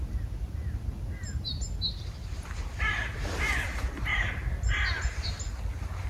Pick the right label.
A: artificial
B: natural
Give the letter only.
B